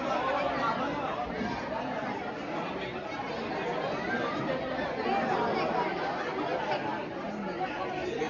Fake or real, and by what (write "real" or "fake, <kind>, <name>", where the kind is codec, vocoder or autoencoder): real